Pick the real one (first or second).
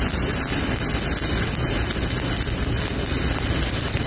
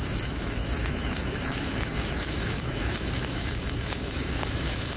first